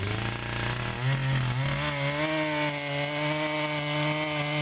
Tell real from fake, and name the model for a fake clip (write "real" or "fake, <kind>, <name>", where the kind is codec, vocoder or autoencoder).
real